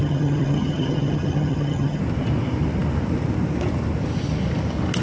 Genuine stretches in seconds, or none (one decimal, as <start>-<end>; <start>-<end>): 2.0-5.0